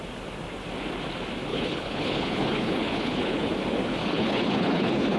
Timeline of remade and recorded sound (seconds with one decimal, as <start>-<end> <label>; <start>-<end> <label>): 0.0-1.5 recorded; 1.5-3.5 remade; 3.5-4.0 recorded; 4.0-5.2 remade